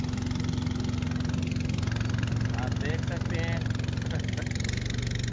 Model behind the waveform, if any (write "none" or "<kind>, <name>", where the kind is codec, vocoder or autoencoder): none